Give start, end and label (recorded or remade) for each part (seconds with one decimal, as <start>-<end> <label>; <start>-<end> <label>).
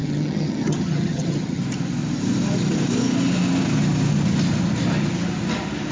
0.0-1.6 remade; 1.6-5.9 recorded